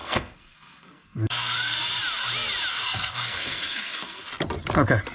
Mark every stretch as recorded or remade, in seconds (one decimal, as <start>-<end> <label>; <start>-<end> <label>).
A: 0.0-1.8 remade; 1.8-2.7 recorded; 2.7-4.3 remade; 4.3-5.1 recorded